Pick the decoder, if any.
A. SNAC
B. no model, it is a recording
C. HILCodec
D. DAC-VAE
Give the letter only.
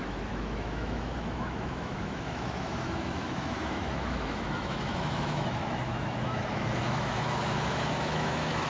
D